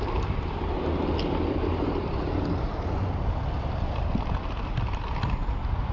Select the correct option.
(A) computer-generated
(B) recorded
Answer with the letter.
B